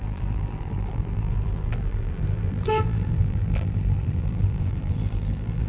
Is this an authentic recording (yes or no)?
no